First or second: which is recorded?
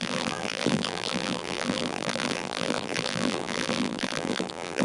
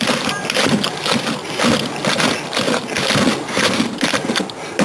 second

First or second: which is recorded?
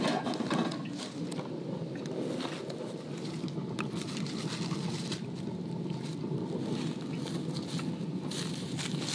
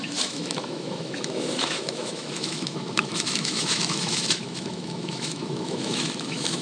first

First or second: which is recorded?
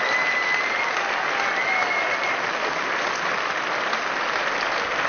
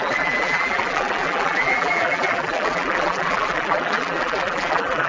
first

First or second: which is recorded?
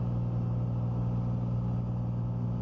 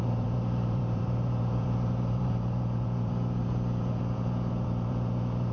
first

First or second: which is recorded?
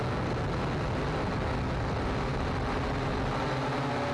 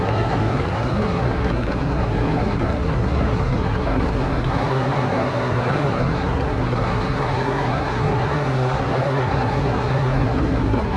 first